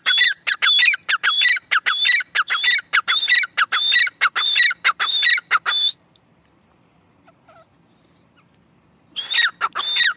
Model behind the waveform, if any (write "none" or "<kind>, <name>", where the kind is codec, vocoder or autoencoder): vocoder, BigVGAN v2